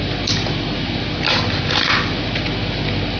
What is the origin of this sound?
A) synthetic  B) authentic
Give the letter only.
B